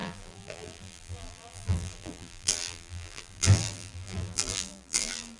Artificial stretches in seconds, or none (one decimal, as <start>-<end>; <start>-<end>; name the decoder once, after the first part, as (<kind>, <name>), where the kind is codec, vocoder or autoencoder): 0.0-5.4 (vocoder, BigVGAN v2)